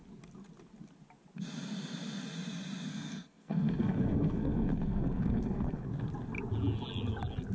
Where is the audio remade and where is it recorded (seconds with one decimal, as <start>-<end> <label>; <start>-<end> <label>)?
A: 0.0-2.9 recorded; 2.9-5.9 remade; 5.9-7.5 recorded